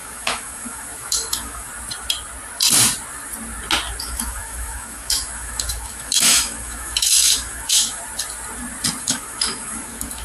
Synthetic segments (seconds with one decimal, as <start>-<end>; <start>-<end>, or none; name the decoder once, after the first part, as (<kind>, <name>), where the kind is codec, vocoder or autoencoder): 0.0-1.7 (autoencoder, DAC-VAE); 4.0-8.0; 9.0-10.2